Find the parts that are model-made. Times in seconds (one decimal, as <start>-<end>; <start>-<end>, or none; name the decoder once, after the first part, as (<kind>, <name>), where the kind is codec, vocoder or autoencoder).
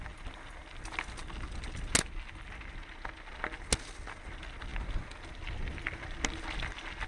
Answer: none